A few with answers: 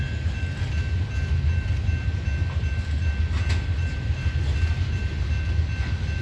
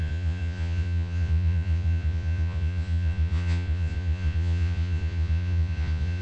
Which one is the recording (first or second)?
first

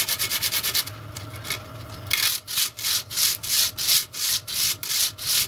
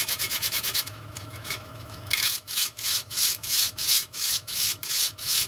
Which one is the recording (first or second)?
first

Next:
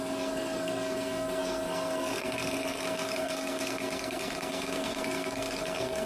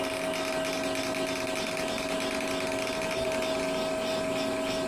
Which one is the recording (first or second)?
second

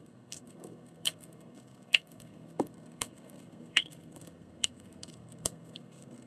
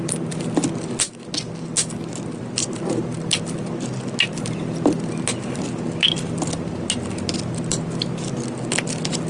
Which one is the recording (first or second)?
second